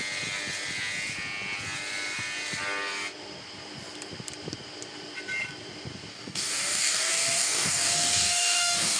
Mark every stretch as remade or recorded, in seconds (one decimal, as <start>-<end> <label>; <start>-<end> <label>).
0.0-6.1 recorded; 6.1-9.0 remade

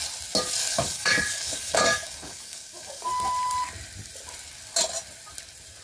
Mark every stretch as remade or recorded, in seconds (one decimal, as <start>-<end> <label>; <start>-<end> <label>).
0.0-0.6 recorded; 0.6-3.1 remade; 3.1-5.8 recorded

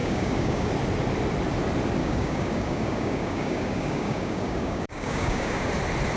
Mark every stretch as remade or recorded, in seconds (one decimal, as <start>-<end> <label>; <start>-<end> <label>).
0.0-0.7 remade; 0.7-2.0 recorded; 2.0-5.7 remade; 5.7-6.2 recorded

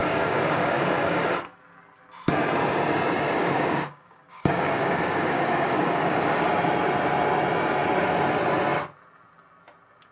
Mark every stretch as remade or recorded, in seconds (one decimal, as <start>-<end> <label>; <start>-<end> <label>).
0.0-1.3 remade; 1.3-3.4 recorded; 3.4-6.5 remade; 6.5-10.1 recorded